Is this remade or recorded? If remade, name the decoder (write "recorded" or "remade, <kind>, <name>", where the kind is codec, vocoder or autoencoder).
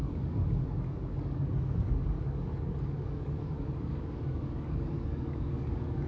remade, codec, DAC